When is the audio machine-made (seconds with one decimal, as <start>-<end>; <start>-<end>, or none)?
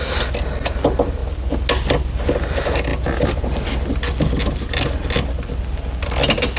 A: none